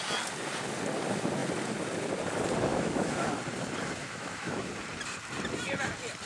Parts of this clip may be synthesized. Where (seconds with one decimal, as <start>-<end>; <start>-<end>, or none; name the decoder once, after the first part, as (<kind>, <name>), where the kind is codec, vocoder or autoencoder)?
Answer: 2.7-3.3 (autoencoder, DAC-VAE); 4.0-4.7